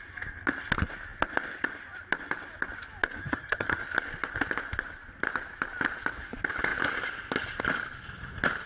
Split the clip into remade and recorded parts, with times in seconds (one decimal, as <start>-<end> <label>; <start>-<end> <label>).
0.0-3.2 recorded; 3.2-3.8 remade; 3.8-8.7 recorded